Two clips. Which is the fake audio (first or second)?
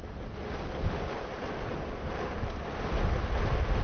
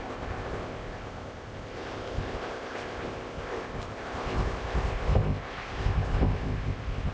second